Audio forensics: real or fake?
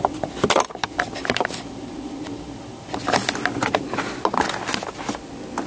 real